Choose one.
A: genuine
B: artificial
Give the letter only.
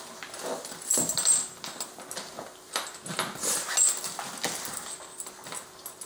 A